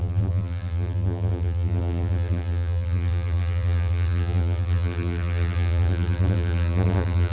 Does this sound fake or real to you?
fake